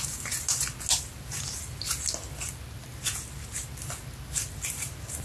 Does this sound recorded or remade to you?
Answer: recorded